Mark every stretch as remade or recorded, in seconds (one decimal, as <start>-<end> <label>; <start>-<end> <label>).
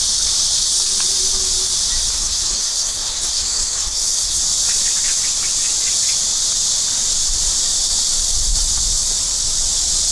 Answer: 0.0-2.1 recorded; 2.1-4.4 remade; 4.4-10.1 recorded